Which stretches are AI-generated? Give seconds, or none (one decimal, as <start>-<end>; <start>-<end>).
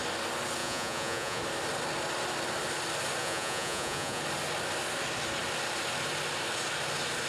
0.6-1.4; 3.2-4.2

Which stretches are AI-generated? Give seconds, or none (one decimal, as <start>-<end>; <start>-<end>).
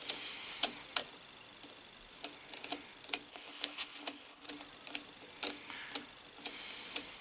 3.3-4.5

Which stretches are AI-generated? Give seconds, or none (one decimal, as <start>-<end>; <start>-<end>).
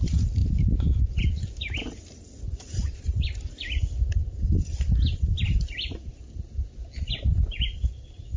0.0-0.4; 1.2-6.1; 7.1-8.4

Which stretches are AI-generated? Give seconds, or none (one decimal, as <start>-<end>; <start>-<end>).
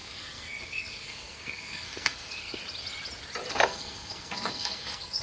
0.0-2.6; 3.5-5.2